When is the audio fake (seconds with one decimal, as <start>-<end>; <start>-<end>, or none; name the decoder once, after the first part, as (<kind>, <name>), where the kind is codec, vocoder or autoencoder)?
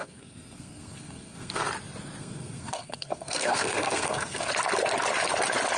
0.0-1.6 (codec, SNAC); 2.2-4.5